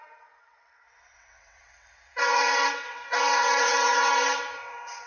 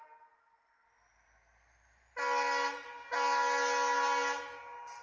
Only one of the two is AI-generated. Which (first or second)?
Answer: first